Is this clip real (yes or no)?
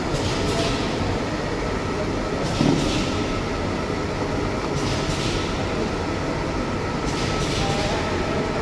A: yes